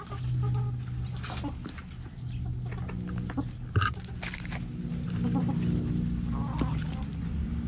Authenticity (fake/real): real